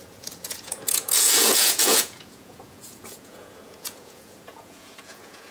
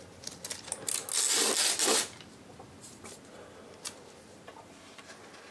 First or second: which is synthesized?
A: first